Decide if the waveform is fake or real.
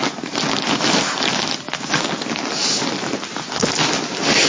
real